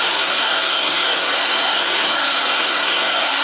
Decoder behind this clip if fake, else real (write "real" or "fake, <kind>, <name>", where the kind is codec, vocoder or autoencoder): fake, codec, SNAC